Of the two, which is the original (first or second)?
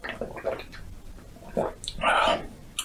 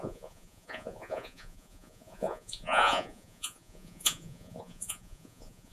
first